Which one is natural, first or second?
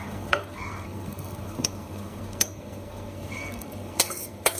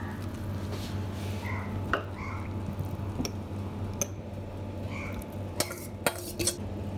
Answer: second